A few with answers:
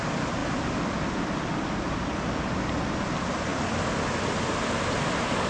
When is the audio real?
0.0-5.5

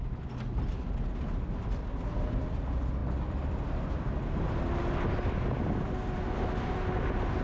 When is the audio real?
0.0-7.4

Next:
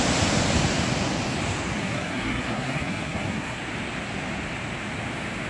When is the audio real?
0.0-1.8; 3.6-5.5

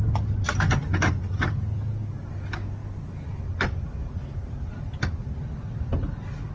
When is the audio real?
0.0-6.5

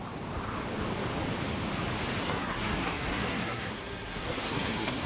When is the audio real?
0.0-2.2

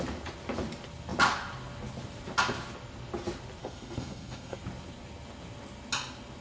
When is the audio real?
0.0-3.6; 4.6-6.4

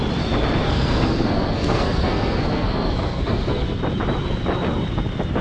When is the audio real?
0.0-0.6; 3.8-5.4